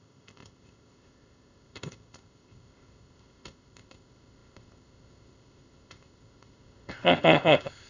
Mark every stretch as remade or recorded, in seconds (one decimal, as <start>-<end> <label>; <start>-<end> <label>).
0.0-7.9 remade